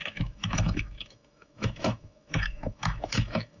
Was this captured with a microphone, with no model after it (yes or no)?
no